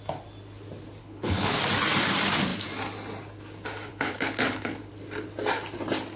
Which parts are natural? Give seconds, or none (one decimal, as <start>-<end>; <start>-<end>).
0.0-1.0; 1.6-3.9; 4.9-6.2